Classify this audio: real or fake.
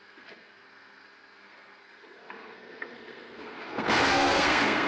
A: fake